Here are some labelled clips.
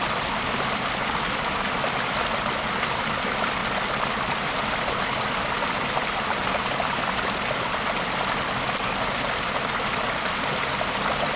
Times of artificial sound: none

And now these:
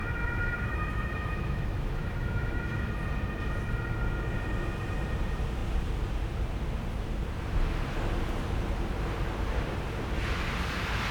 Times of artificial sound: 0.0-2.9 (autoencoder, DAC-VAE)

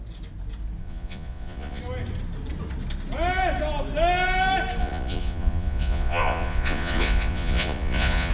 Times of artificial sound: 0.8-1.8 (vocoder, Vocos); 4.8-8.3

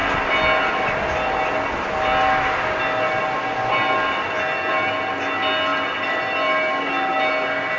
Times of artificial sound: none

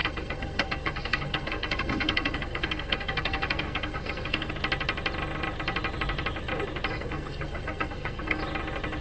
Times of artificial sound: 0.0-4.5 (codec, SNAC); 6.9-8.4

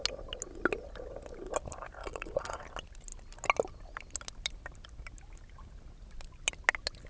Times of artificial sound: 2.0-2.6 (vocoder, Vocos)

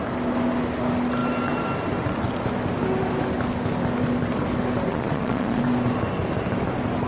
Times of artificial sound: 4.9-5.6 (vocoder, Vocos)

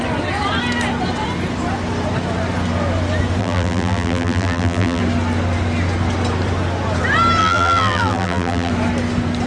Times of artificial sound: 3.4-5.0 (vocoder, BigVGAN v2); 7.4-8.7